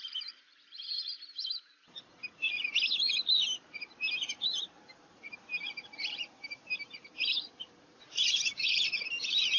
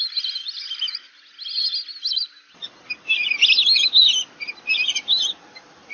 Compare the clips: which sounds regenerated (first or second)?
first